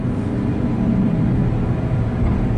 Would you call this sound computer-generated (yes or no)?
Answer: no